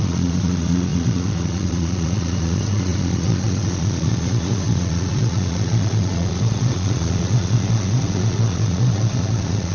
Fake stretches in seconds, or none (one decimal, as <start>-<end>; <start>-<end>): 0.0-9.7